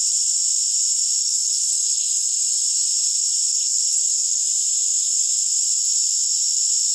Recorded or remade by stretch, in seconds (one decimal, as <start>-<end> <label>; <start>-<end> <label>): 0.0-1.2 recorded; 1.2-2.3 remade; 2.3-3.5 recorded; 3.5-4.4 remade; 4.4-6.9 recorded